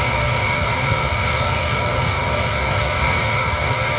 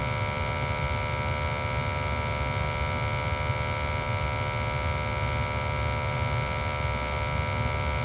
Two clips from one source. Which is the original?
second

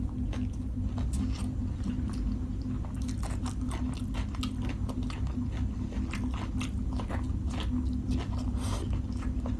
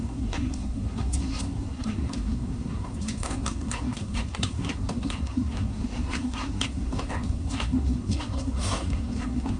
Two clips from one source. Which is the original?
first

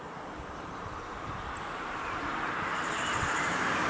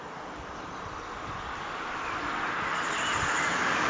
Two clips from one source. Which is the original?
second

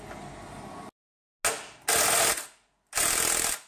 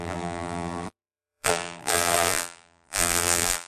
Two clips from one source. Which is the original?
first